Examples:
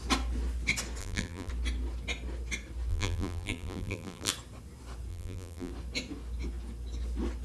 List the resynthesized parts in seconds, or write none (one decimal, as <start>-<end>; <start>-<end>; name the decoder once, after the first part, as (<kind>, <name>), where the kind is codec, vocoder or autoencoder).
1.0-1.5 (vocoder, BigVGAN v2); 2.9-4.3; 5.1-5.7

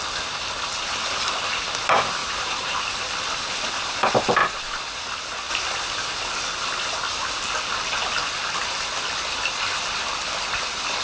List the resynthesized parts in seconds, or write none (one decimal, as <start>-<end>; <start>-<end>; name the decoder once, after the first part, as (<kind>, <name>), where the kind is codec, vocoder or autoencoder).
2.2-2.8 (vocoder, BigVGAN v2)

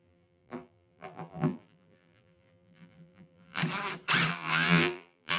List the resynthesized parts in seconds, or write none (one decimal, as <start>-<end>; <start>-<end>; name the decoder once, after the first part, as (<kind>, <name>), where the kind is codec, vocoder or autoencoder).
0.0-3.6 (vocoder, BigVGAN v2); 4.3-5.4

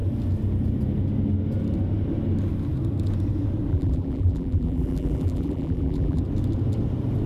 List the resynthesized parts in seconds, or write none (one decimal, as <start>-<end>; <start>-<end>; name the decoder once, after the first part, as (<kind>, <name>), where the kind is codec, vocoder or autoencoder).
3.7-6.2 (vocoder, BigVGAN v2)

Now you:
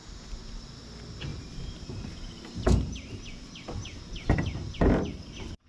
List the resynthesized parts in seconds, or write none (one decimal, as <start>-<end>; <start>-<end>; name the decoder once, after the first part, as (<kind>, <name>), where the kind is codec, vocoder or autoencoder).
1.3-4.7 (vocoder, BigVGAN v2)

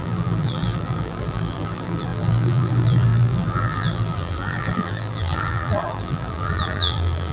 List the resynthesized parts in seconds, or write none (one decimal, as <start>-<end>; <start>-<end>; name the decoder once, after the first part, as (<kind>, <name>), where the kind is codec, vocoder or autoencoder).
0.0-7.3 (vocoder, BigVGAN v2)